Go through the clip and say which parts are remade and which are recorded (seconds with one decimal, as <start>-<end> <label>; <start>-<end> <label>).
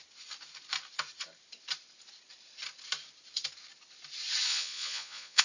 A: 0.0-4.5 recorded; 4.5-5.4 remade